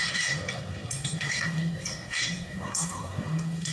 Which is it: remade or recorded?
remade